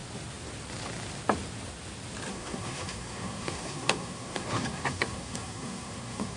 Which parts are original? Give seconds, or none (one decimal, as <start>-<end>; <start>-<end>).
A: 0.0-2.3